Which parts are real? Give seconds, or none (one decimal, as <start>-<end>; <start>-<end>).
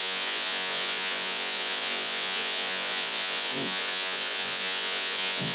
none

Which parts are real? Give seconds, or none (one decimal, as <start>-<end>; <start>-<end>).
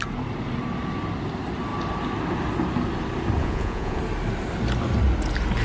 0.0-3.4; 4.0-5.6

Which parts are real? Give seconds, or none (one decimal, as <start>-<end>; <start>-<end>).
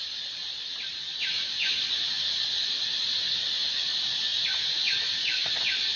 0.0-6.0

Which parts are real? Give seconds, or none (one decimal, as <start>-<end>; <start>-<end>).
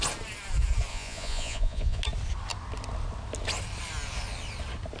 0.0-0.9; 2.0-5.0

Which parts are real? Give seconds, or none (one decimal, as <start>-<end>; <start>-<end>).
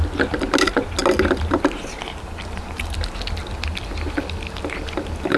0.0-5.4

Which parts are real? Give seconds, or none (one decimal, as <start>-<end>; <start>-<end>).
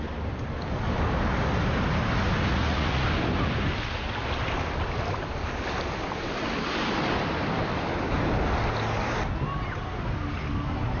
0.0-2.5; 3.0-11.0